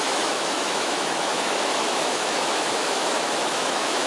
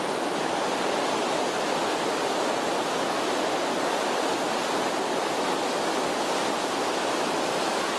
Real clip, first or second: second